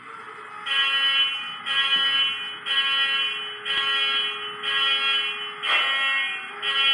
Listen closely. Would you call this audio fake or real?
real